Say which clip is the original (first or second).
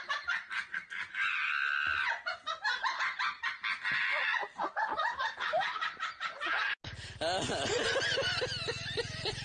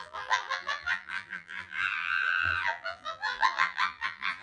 first